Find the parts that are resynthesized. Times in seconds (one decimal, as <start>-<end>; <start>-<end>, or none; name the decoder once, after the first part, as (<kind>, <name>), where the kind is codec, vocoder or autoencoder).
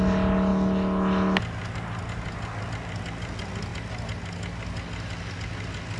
none